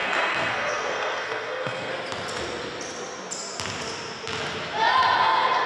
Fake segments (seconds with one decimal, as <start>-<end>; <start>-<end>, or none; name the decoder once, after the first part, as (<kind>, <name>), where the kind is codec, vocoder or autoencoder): 0.0-1.9 (codec, SNAC); 5.2-5.7